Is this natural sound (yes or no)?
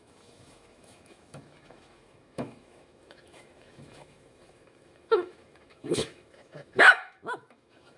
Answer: no